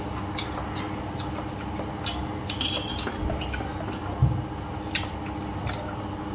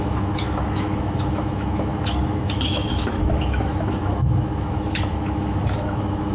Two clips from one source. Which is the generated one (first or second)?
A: second